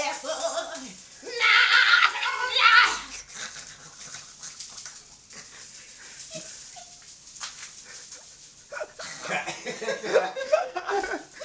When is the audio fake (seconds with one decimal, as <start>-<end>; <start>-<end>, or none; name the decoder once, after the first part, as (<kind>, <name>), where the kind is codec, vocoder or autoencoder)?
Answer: 1.9-2.5 (codec, SNAC); 10.1-11.0